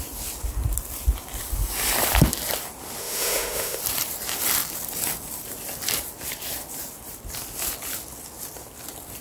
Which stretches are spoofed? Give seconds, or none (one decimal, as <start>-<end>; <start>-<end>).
3.0-3.8